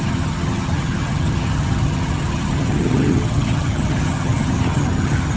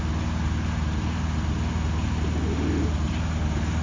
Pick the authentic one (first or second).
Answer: second